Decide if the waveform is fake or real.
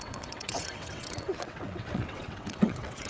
fake